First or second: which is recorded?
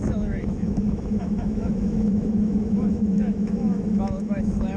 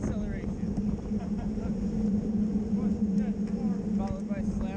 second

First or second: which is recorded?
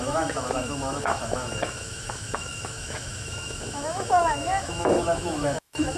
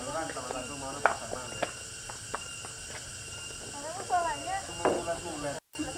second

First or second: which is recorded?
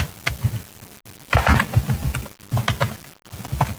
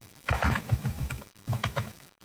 first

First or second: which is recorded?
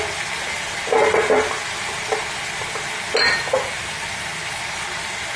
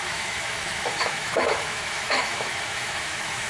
first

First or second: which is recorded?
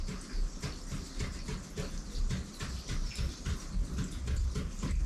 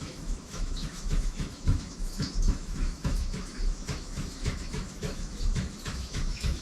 first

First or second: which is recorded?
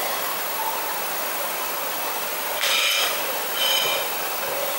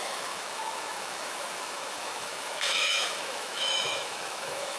first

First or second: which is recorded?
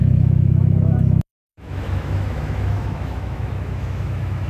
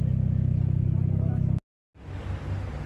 second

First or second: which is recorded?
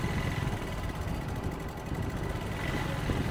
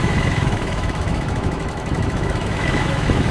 first